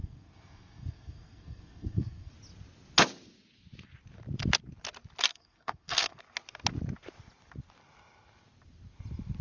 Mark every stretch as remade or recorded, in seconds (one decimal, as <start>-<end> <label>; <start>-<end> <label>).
0.0-2.3 remade; 2.3-5.3 recorded; 5.3-6.2 remade; 6.2-9.4 recorded